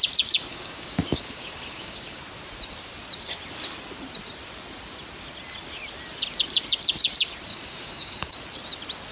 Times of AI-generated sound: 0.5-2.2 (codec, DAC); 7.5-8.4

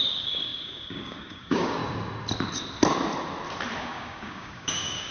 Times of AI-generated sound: 0.0-1.8 (codec, DAC); 3.8-5.1